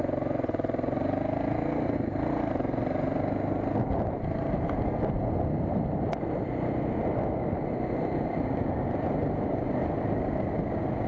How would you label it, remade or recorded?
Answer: recorded